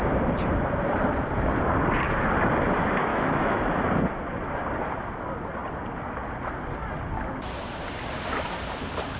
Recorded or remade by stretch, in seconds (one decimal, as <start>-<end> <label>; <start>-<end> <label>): 0.0-3.1 recorded; 3.1-3.6 remade; 3.6-9.2 recorded